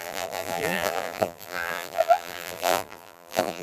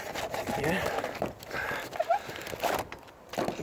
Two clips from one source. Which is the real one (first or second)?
second